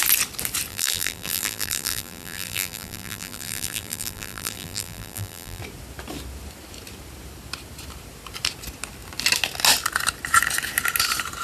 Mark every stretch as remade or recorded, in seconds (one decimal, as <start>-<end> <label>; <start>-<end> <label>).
0.0-0.7 recorded; 0.7-5.6 remade; 5.6-11.4 recorded